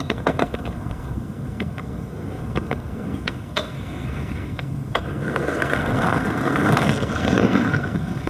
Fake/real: fake